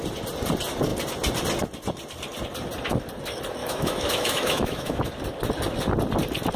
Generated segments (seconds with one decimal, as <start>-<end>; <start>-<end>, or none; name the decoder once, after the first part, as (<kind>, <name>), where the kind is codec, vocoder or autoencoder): 3.6-5.0 (autoencoder, DAC-VAE)